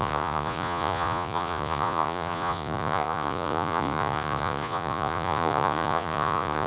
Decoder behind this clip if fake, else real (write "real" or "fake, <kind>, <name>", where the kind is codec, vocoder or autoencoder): fake, vocoder, Vocos